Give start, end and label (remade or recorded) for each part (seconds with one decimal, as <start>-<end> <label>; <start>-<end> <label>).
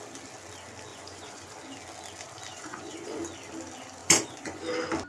0.0-0.9 recorded; 0.9-1.5 remade; 1.5-2.5 recorded; 2.5-3.2 remade; 3.2-4.0 recorded; 4.0-4.6 remade; 4.6-5.1 recorded